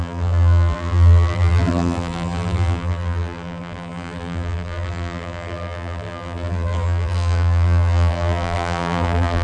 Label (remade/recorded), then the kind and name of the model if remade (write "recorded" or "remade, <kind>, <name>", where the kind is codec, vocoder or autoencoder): remade, vocoder, BigVGAN v2